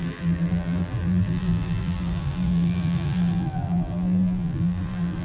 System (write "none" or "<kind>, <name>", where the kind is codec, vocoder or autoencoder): vocoder, BigVGAN v2